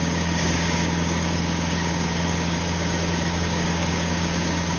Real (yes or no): no